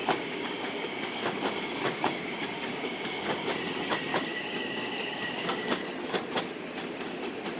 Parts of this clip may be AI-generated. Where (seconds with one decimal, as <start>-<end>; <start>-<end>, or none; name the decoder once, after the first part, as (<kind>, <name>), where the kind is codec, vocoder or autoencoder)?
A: 0.0-3.5 (codec, DAC); 4.1-5.8

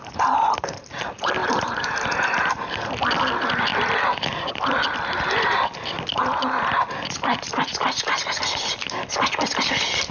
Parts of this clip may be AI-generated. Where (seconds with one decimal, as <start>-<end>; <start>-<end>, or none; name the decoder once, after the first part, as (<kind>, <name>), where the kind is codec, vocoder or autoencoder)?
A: none

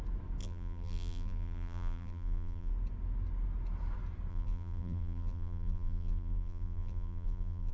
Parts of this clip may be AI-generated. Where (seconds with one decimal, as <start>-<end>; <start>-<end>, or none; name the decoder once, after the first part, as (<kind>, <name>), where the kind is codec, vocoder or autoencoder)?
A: 0.4-2.7 (vocoder, BigVGAN v2); 4.3-7.7

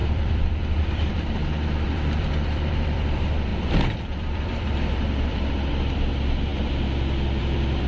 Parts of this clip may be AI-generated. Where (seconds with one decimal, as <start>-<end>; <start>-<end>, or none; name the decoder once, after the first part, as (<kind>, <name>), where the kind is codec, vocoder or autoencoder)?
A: 0.0-6.5 (vocoder, BigVGAN v2); 7.4-7.9

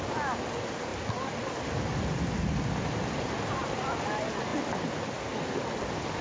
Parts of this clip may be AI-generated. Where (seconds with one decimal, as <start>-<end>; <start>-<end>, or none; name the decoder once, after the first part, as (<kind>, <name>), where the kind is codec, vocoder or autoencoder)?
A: none